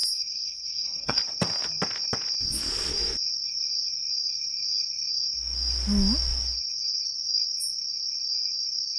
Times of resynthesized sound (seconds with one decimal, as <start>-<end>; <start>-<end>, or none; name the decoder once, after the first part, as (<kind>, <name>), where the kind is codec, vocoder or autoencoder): 0.0-1.2 (codec, SNAC)